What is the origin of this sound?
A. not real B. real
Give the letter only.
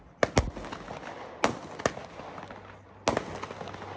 B